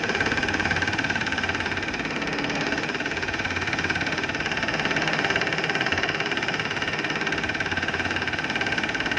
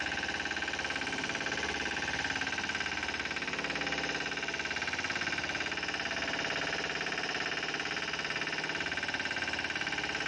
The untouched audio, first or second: second